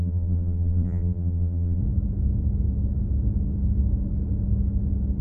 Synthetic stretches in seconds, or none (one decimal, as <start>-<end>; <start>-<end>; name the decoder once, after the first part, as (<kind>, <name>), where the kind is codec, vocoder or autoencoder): 0.0-1.8 (vocoder, BigVGAN v2)